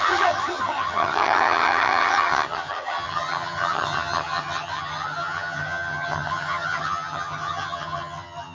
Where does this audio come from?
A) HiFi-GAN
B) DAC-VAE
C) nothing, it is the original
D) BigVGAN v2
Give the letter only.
A